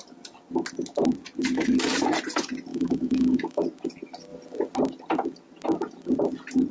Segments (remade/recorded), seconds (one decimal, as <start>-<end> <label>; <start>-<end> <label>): 0.0-2.7 recorded; 2.7-3.6 remade; 3.6-6.7 recorded